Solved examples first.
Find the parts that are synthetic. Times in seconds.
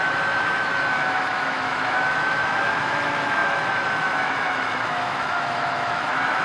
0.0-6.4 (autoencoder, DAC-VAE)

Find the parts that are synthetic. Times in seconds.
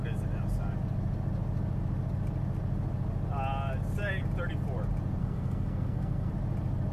5.2-6.3 (codec, SNAC)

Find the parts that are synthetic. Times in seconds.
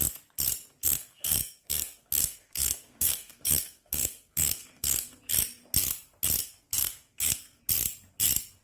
0.8-5.2 (codec, SNAC); 6.4-7.6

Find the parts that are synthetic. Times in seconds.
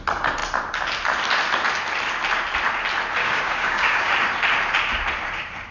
3.2-4.1 (codec, DAC)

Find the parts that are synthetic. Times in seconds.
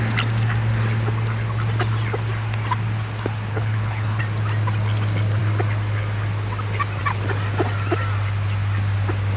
3.5-4.2 (codec, HILCodec)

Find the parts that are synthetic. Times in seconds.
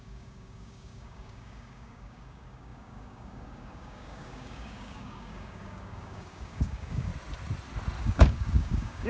0.0-7.1 (codec, DAC); 8.0-9.1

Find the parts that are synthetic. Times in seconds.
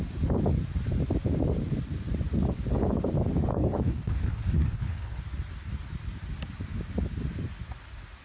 3.5-5.2 (codec, HILCodec)